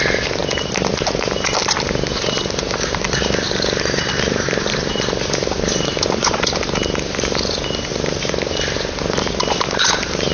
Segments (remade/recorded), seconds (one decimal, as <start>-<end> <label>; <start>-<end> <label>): 0.0-0.4 remade; 0.4-0.9 recorded; 0.9-10.3 remade